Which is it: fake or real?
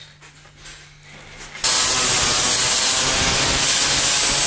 real